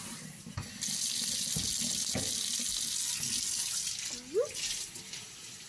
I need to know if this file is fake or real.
real